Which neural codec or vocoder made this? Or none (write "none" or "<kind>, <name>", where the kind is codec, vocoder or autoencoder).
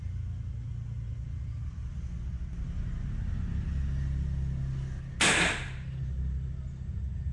none